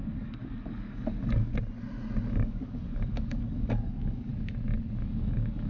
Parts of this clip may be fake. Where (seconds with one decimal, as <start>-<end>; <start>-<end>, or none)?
0.0-1.5; 2.3-4.3; 4.9-5.7